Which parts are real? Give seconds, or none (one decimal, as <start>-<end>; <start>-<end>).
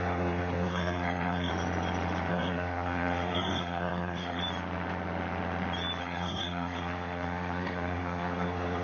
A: 1.5-2.3; 4.4-6.0